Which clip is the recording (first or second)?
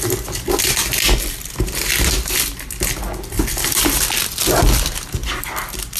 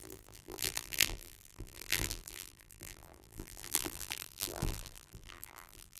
first